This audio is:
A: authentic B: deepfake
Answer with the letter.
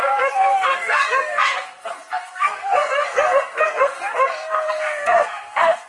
B